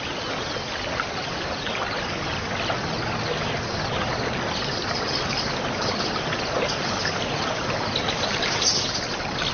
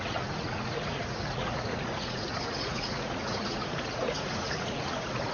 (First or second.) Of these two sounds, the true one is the first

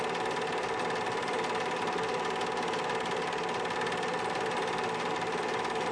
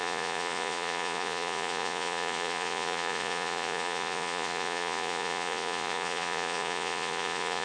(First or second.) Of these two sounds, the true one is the first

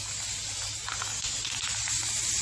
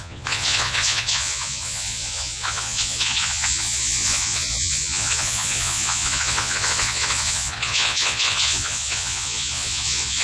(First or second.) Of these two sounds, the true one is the first